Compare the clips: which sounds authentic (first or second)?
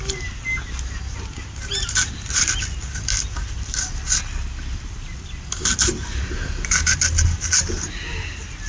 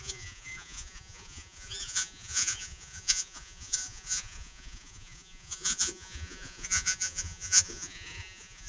first